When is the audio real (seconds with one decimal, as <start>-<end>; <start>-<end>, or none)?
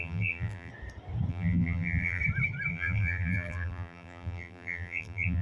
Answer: 0.7-1.3; 2.2-2.7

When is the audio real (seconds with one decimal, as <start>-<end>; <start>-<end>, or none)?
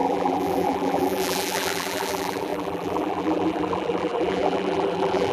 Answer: none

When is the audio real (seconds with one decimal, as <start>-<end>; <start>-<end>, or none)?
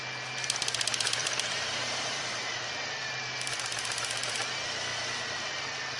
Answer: 0.0-1.2; 2.6-6.0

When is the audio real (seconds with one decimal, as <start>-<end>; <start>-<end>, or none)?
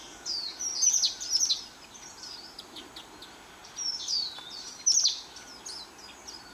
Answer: 0.0-3.6; 4.3-6.5